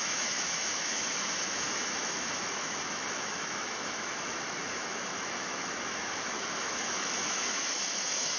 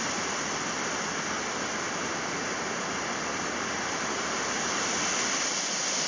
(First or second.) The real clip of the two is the second